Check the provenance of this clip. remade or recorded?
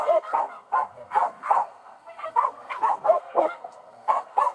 remade